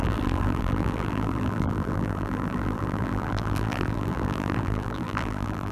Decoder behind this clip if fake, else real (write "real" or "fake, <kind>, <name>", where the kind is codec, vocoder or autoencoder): fake, vocoder, BigVGAN v2